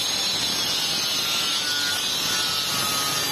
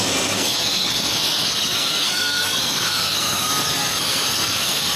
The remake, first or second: second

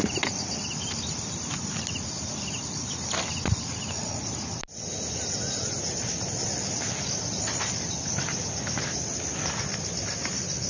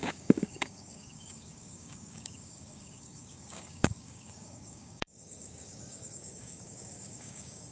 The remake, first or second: second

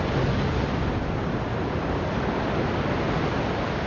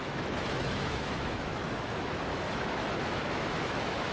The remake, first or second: second